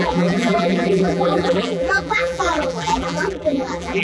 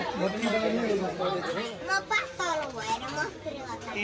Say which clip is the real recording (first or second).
second